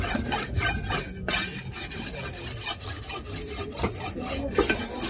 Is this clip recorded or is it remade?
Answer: recorded